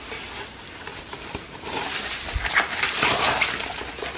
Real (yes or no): yes